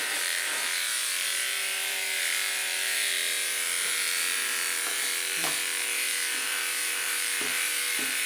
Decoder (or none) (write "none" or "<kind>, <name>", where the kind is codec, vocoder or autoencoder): vocoder, BigVGAN v2